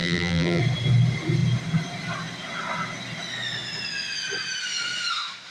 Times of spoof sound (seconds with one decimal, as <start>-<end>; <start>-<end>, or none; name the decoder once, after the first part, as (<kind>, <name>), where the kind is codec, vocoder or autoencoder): 0.0-0.6 (vocoder, BigVGAN v2)